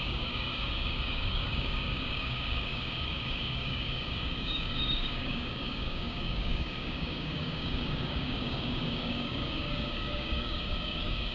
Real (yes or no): no